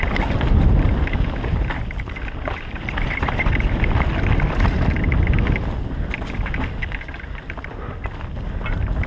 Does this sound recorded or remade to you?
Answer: recorded